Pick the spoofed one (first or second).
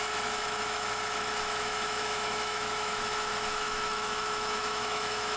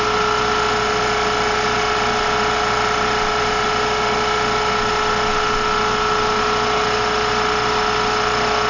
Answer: first